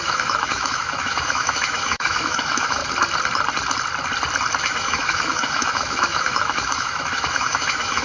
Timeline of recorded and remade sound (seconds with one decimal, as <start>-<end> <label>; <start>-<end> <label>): 0.0-2.8 remade; 2.8-4.6 recorded; 4.6-8.0 remade